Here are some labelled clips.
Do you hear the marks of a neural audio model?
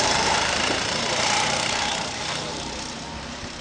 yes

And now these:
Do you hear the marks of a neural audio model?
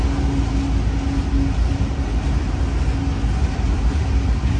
no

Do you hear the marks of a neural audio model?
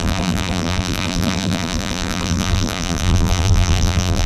yes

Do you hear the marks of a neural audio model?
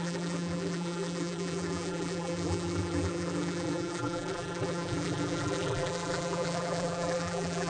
yes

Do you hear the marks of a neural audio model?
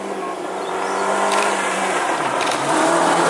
yes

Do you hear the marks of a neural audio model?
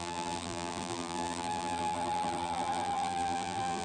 yes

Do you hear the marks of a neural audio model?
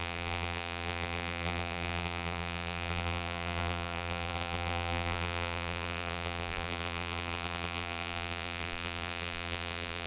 yes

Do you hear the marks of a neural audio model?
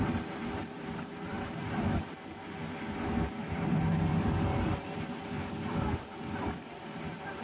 yes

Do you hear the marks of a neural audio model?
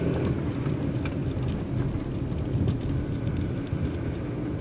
no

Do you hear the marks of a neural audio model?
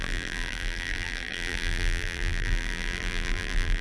yes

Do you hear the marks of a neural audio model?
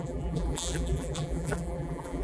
yes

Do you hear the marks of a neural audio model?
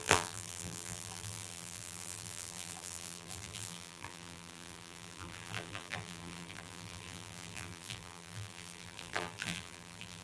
yes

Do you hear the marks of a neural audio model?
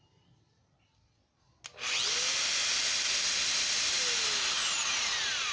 no